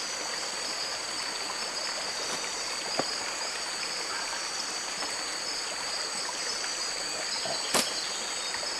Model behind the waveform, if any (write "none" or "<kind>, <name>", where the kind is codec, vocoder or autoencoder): none